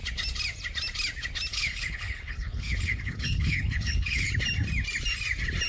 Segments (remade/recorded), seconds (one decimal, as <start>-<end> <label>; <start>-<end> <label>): 0.0-1.5 recorded; 1.5-4.3 remade; 4.3-5.7 recorded